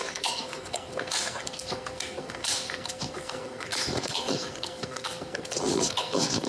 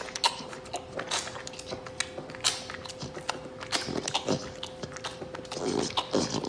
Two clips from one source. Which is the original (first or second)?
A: second